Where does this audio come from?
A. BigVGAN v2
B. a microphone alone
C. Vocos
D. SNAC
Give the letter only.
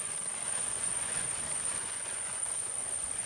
C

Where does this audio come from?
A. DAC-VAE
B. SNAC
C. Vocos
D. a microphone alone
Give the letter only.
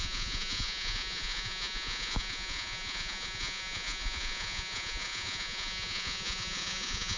C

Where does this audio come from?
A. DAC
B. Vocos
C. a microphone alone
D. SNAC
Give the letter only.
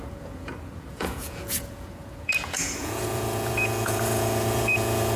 B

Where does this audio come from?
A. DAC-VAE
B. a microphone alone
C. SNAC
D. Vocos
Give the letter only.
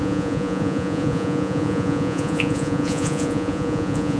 D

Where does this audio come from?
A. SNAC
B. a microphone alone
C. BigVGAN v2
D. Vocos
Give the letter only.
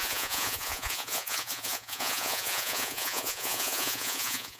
D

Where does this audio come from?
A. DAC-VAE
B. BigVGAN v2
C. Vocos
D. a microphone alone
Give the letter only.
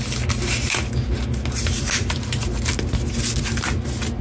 D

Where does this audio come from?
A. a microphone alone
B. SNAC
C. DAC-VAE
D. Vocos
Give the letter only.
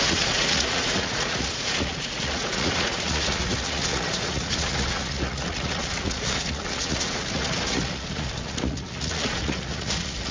D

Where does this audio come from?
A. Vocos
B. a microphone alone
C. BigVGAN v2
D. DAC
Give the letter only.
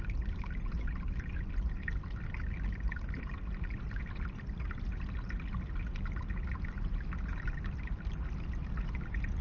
B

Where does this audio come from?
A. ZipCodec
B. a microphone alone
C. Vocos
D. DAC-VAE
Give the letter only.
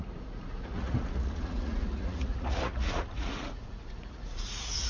C